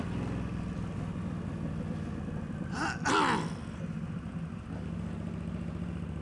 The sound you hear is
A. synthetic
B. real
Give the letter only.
B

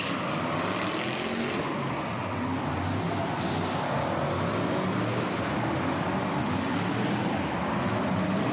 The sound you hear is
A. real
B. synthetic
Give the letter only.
A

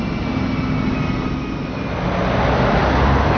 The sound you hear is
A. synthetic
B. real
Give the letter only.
B